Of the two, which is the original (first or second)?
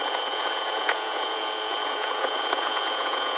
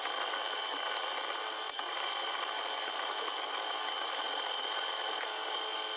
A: second